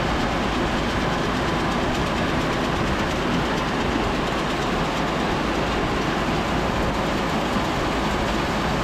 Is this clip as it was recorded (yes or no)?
yes